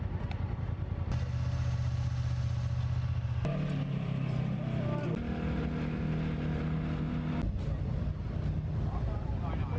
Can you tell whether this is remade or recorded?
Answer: recorded